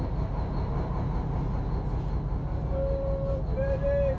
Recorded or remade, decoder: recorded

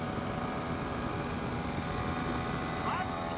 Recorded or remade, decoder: recorded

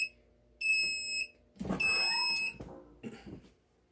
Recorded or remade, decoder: recorded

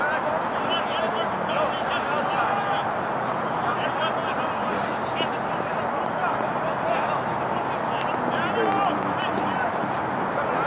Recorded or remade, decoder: recorded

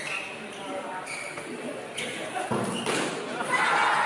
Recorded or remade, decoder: recorded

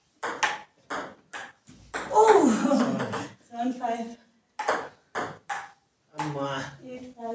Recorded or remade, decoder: recorded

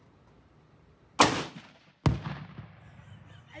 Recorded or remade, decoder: recorded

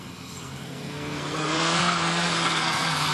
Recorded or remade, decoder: remade, codec, SNAC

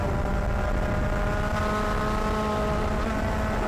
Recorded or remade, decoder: recorded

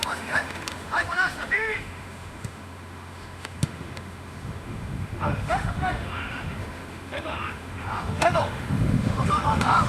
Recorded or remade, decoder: remade, autoencoder, DAC-VAE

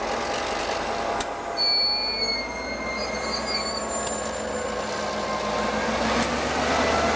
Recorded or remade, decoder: recorded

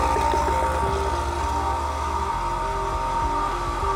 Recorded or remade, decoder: recorded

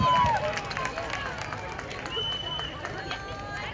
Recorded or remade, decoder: recorded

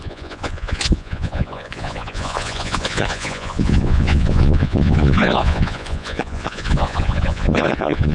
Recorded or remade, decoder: remade, vocoder, Vocos